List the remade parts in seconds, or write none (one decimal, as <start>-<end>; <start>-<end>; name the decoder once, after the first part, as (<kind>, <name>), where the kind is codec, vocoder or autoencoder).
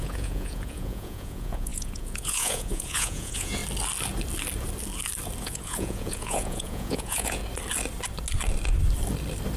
0.0-3.6 (vocoder, Vocos); 5.4-7.4